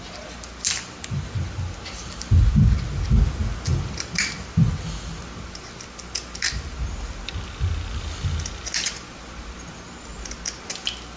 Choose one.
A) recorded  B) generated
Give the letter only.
A